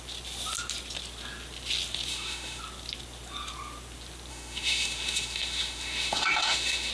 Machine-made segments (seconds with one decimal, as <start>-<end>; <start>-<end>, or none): 2.1-2.6; 4.3-6.9